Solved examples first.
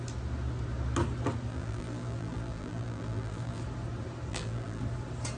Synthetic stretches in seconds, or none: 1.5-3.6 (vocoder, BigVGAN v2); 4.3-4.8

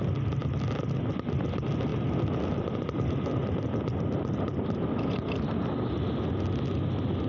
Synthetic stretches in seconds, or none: none

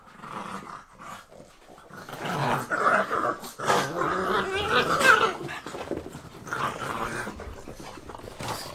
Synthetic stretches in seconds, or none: 5.4-6.8 (vocoder, BigVGAN v2)

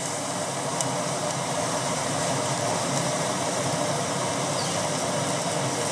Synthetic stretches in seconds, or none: 0.7-3.9 (vocoder, BigVGAN v2)

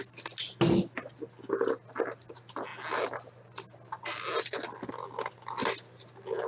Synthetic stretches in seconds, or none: none

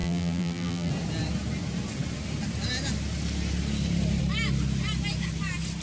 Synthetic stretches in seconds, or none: 0.0-0.9 (vocoder, BigVGAN v2)

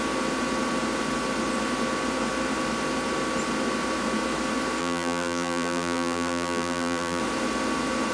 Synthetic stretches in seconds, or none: 4.8-7.2 (vocoder, BigVGAN v2)

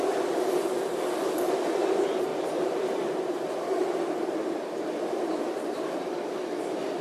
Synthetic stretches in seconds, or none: 2.3-6.4 (vocoder, BigVGAN v2)